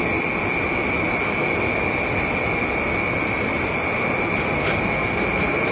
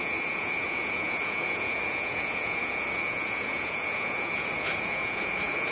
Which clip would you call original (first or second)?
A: first